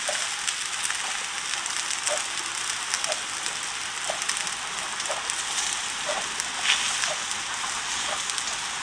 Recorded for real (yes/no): yes